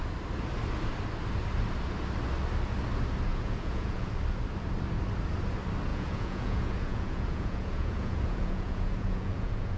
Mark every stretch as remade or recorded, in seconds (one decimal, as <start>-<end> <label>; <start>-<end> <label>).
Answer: 0.0-3.3 recorded; 3.3-4.1 remade; 4.1-5.9 recorded; 5.9-9.8 remade